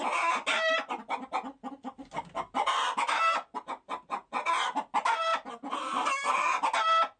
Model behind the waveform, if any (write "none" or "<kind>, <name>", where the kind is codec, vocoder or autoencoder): none